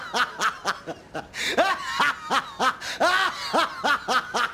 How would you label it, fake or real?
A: real